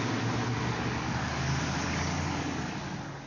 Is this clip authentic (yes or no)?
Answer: no